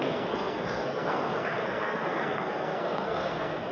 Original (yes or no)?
no